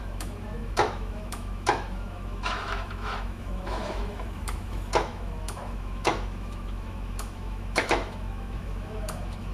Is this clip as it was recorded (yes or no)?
no